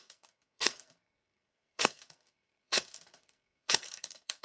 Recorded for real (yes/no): no